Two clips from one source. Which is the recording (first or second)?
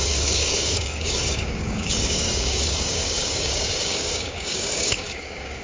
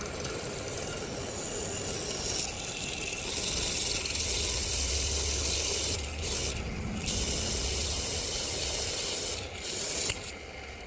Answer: second